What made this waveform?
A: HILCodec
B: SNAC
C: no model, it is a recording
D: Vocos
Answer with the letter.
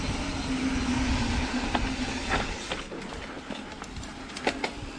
C